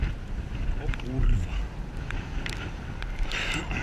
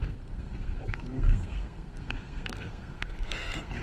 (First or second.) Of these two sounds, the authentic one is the first